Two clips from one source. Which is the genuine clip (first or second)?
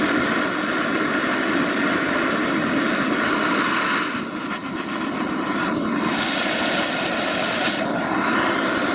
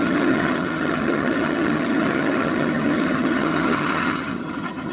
first